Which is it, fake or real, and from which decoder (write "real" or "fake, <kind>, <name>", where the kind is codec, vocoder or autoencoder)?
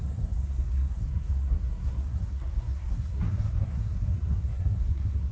fake, codec, SNAC